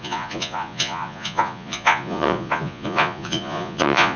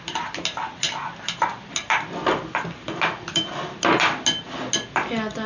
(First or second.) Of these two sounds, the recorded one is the second